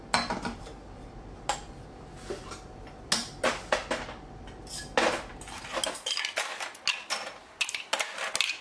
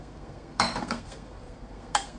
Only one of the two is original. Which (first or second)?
first